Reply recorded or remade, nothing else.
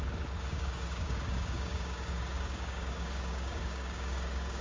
remade